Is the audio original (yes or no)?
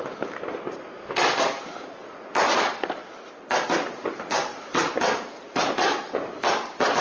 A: yes